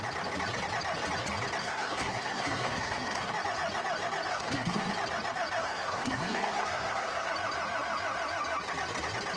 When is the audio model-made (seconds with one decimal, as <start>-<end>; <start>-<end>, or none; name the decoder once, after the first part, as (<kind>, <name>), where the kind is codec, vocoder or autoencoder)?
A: 1.6-3.3 (codec, SNAC); 4.3-4.9; 5.6-7.3